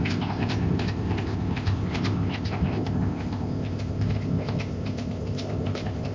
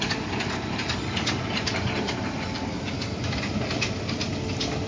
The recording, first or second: second